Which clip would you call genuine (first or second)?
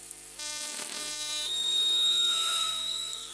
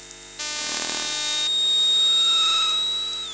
second